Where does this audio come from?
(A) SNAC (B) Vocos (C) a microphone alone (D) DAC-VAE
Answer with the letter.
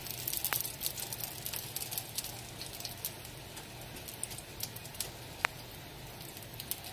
C